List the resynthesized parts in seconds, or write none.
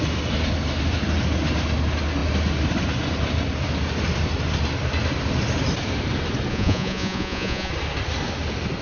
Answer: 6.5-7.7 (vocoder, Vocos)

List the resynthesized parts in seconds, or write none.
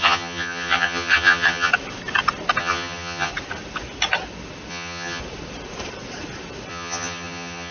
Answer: 0.0-1.7 (vocoder, HiFi-GAN); 2.6-3.3; 4.7-5.2; 6.7-7.7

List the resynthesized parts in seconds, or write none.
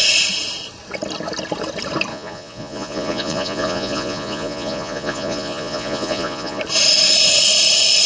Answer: 2.1-6.6 (vocoder, Vocos)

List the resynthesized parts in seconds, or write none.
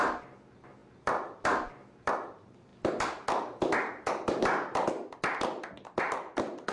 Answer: 0.8-2.1 (vocoder, BigVGAN v2)